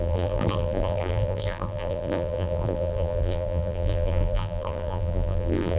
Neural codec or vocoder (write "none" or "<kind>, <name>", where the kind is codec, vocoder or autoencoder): vocoder, BigVGAN v2